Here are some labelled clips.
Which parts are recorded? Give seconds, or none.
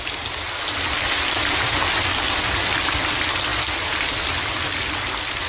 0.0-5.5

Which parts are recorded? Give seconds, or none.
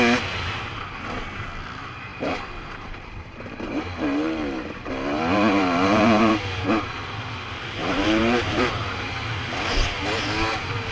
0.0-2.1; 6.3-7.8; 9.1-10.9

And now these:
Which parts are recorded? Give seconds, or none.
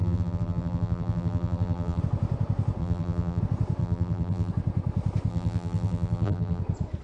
2.0-2.8; 3.4-3.8; 4.5-5.3; 6.6-7.0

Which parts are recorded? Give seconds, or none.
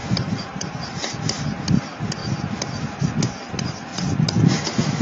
0.9-5.0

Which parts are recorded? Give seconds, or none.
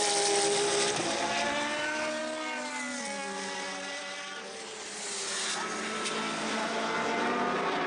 0.0-7.9